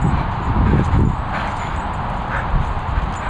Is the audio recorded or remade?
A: recorded